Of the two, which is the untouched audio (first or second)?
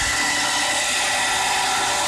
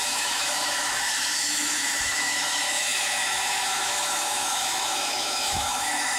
first